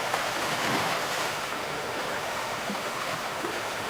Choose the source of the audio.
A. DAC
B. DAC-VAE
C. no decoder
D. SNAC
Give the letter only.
B